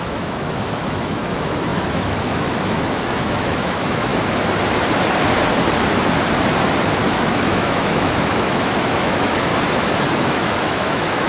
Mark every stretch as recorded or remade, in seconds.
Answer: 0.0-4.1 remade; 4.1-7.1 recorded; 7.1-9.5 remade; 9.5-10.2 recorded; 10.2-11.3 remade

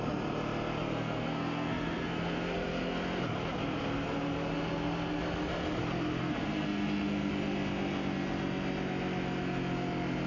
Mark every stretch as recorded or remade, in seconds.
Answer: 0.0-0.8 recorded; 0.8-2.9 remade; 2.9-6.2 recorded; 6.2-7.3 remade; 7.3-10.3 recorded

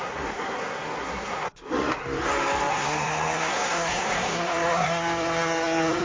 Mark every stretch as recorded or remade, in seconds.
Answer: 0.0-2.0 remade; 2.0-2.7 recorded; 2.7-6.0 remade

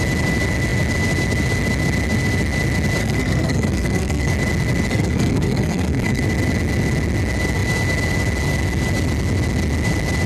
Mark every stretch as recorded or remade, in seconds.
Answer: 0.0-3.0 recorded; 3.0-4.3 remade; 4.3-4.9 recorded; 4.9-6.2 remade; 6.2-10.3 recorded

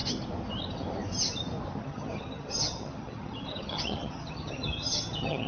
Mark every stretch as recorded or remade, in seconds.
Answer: 0.0-1.8 recorded; 1.8-5.5 remade